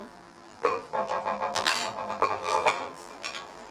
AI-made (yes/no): yes